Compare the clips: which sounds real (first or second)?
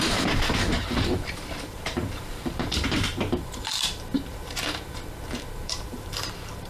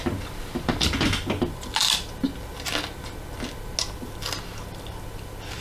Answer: second